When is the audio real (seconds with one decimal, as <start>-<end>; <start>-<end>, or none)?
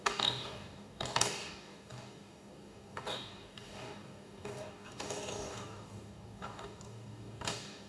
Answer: none